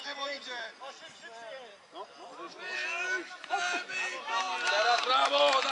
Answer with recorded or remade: recorded